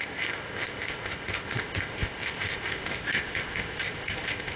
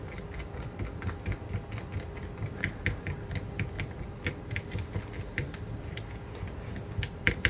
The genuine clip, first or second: second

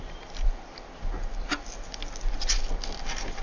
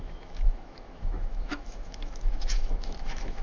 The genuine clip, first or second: first